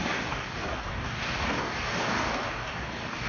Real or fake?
fake